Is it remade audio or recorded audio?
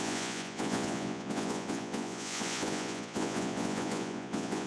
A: remade